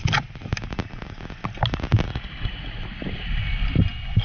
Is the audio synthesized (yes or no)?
no